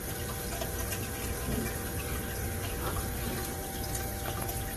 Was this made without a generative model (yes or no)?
yes